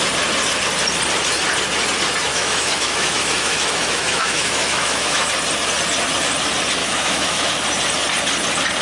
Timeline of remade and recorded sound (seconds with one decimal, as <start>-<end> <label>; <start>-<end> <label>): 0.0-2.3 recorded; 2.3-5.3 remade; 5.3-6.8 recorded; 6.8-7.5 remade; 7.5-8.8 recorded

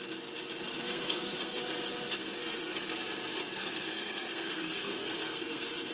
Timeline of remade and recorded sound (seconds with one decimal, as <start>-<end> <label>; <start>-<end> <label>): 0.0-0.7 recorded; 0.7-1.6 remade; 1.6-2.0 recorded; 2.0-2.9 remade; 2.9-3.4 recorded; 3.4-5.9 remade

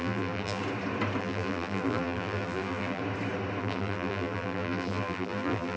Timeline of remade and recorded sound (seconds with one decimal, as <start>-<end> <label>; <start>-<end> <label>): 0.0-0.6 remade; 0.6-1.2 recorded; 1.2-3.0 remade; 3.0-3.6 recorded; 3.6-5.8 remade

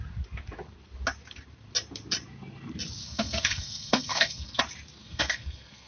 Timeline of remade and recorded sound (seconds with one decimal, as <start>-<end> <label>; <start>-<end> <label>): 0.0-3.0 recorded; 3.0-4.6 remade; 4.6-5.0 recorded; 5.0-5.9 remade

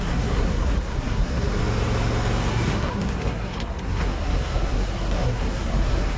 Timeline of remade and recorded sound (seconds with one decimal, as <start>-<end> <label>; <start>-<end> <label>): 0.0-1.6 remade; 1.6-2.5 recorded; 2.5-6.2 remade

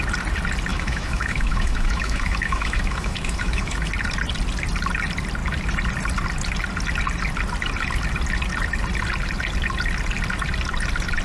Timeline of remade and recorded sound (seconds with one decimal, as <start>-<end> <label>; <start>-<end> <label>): 0.0-0.7 recorded; 0.7-3.9 remade; 3.9-11.2 recorded

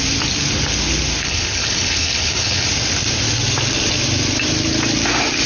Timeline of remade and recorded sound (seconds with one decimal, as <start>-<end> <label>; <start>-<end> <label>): 0.0-1.2 recorded; 1.2-2.7 remade; 2.7-5.5 recorded

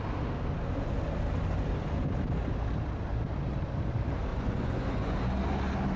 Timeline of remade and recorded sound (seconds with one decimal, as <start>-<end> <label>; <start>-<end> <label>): 0.0-4.3 recorded; 4.3-5.2 remade; 5.2-6.0 recorded